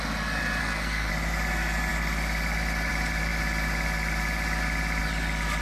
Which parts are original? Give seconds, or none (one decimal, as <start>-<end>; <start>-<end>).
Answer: 0.0-0.6; 1.1-5.6